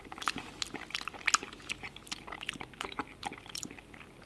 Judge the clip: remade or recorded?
recorded